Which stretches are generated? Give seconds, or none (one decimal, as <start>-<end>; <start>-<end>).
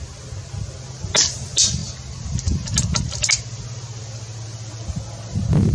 none